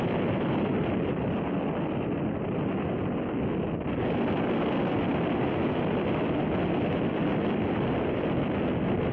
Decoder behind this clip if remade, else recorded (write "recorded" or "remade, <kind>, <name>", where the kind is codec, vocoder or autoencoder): recorded